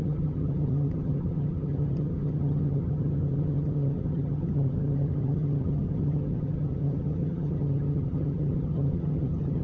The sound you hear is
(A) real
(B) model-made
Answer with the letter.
B